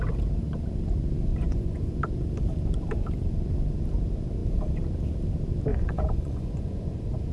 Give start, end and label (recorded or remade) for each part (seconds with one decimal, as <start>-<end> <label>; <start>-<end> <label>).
0.0-1.3 recorded; 1.3-1.9 remade; 1.9-5.7 recorded; 5.7-7.3 remade